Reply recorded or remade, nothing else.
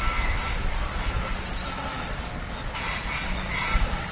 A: recorded